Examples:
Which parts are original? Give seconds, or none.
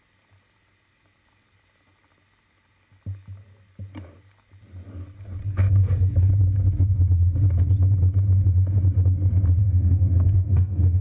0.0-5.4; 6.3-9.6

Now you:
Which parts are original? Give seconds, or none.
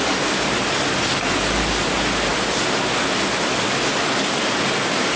0.0-5.2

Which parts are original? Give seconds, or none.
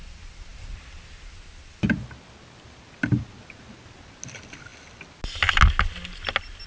0.0-6.7